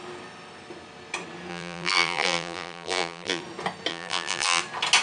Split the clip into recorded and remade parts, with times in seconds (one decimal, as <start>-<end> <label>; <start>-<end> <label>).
0.0-1.5 recorded; 1.5-3.4 remade; 3.4-3.9 recorded; 3.9-4.6 remade; 4.6-5.0 recorded